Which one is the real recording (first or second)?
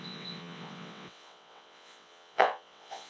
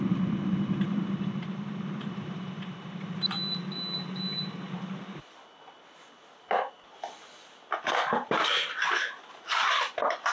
second